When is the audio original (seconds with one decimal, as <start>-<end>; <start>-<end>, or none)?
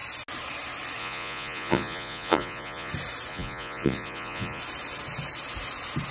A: 0.0-1.0; 2.9-3.3; 4.6-6.1